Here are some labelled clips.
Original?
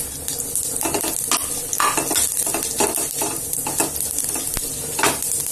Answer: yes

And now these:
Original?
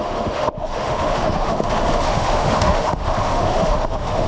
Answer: no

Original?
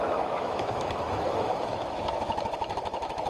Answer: no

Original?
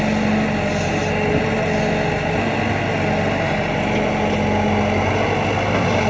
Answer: yes